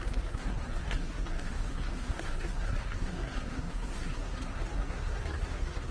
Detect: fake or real fake